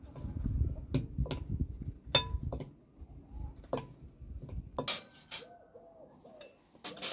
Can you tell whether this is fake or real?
real